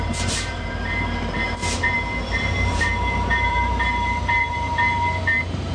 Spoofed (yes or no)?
yes